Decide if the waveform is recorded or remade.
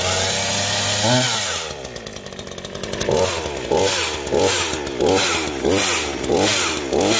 recorded